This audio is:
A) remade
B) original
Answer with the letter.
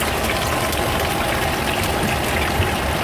B